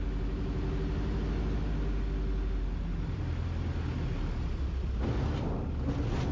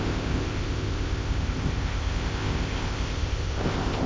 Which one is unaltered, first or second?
first